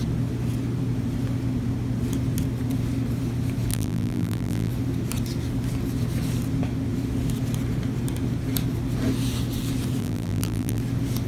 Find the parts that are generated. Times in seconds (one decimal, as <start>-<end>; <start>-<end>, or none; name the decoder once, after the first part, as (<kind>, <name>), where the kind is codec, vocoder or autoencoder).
3.7-4.7 (vocoder, BigVGAN v2); 10.0-10.8